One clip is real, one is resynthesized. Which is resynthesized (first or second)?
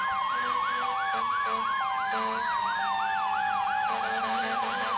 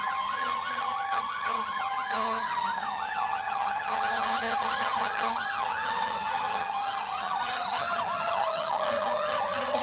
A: second